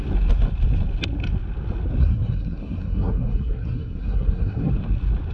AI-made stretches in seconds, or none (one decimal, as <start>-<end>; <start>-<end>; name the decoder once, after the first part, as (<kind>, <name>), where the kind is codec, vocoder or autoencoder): 2.0-4.7 (codec, SNAC)